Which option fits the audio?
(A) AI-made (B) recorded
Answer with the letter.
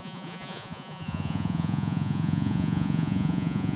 A